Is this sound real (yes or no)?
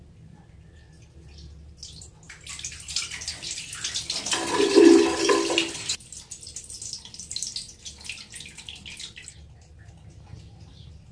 yes